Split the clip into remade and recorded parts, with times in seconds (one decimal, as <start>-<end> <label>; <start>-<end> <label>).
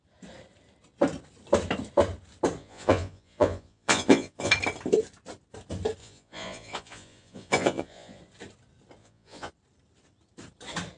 0.0-2.6 recorded; 2.6-4.5 remade; 4.5-6.0 recorded; 6.0-8.2 remade; 8.2-9.0 recorded; 9.0-9.5 remade; 9.5-11.0 recorded